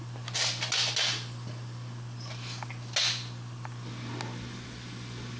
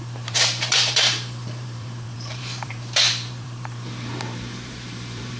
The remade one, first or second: second